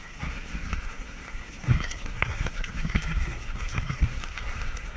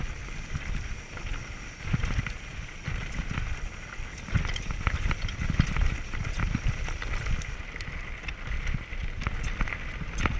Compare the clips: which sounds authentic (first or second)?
second